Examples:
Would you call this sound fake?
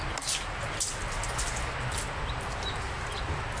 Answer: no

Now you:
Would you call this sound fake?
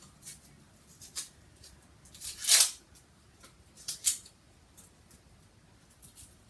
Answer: no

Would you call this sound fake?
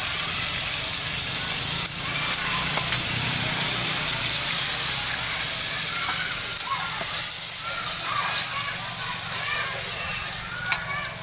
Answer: no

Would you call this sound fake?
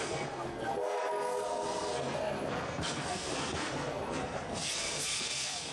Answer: yes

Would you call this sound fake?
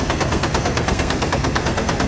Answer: yes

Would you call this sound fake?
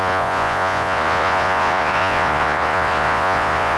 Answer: yes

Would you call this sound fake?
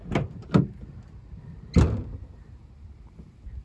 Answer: no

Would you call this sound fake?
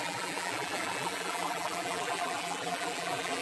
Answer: yes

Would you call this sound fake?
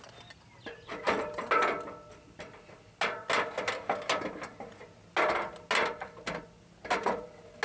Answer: no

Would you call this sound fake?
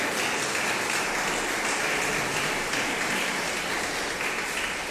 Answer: no